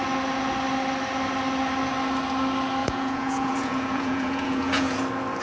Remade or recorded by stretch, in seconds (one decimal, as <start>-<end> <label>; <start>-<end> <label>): 0.0-2.8 recorded; 2.8-5.0 remade; 5.0-5.4 recorded